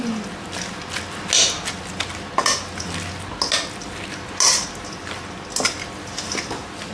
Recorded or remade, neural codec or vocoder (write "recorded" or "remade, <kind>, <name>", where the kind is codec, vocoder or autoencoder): recorded